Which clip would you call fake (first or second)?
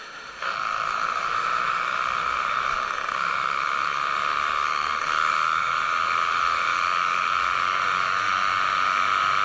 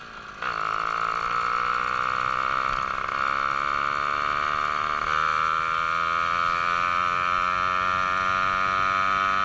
first